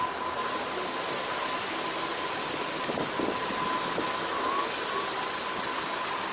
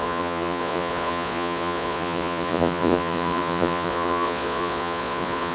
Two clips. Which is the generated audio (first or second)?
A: second